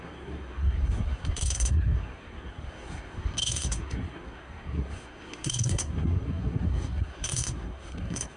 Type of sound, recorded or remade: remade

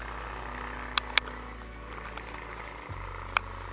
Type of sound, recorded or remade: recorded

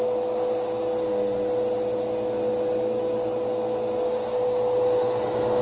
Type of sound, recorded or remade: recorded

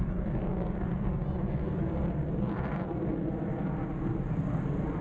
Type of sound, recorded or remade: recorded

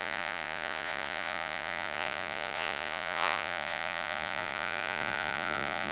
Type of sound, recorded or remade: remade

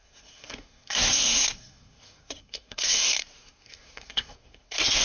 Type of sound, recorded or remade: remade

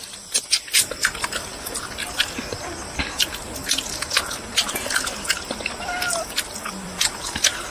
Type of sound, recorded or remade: remade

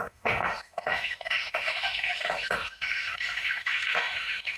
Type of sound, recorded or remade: remade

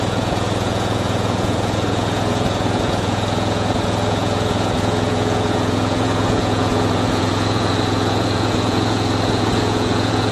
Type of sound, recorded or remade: remade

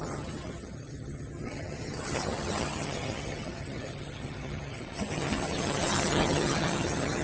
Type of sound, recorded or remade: remade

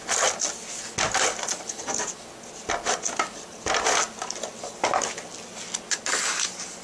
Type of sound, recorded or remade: recorded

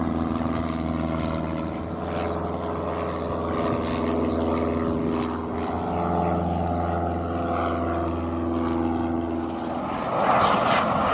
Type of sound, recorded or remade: recorded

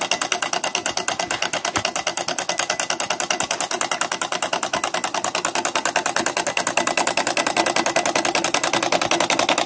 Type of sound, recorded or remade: recorded